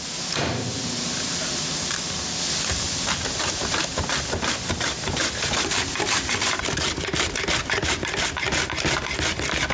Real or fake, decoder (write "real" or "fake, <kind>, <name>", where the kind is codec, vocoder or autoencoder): real